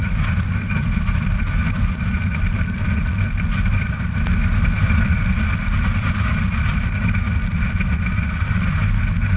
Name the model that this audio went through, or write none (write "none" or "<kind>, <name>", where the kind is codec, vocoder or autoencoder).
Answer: none